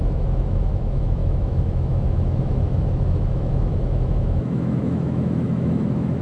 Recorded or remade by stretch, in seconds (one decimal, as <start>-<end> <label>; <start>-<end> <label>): 0.0-6.2 remade